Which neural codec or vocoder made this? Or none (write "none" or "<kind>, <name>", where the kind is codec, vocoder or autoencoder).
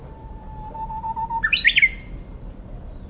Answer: vocoder, BigVGAN v2